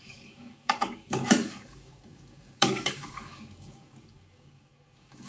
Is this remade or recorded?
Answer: remade